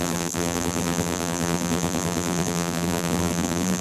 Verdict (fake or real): fake